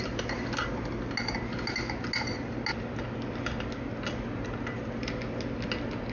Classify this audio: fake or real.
real